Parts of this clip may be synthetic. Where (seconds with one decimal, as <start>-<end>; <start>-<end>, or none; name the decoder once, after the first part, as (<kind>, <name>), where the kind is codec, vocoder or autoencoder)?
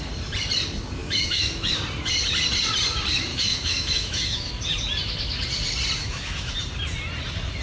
1.0-1.8 (autoencoder, DAC-VAE); 3.3-4.5; 6.0-6.5